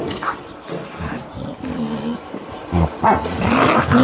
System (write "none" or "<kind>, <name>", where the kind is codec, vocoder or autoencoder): none